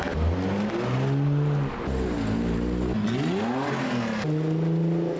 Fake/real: real